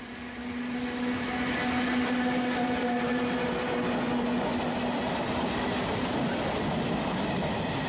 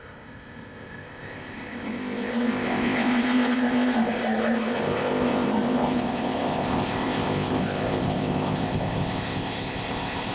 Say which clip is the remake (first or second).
second